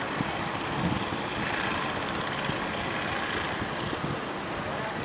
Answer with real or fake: real